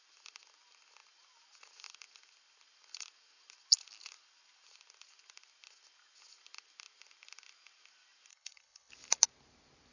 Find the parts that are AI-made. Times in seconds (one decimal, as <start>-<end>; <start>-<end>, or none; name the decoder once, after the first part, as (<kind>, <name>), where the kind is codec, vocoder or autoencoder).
8.3-8.9 (codec, HILCodec)